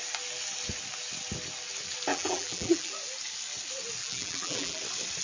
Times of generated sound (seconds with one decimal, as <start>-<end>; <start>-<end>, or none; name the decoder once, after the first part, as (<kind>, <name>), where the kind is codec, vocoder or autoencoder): 2.1-2.9 (vocoder, BigVGAN v2); 4.0-4.8